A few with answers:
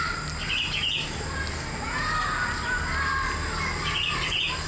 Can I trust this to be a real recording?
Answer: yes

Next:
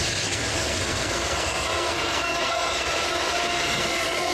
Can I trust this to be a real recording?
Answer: no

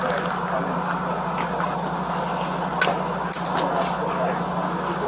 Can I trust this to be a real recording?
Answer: yes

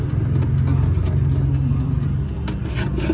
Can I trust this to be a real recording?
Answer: yes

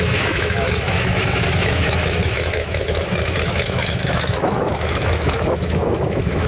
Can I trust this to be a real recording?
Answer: no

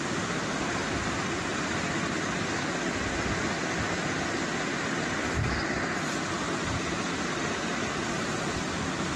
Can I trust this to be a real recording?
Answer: yes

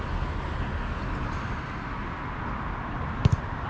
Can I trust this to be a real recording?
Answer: yes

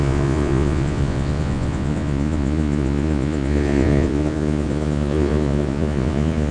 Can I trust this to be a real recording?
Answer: no